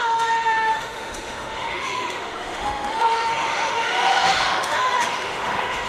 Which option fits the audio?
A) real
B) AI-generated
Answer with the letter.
B